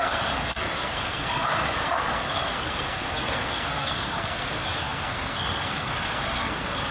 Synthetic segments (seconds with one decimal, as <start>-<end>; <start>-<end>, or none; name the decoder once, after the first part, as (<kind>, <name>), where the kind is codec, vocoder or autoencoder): 0.0-6.9 (codec, SNAC)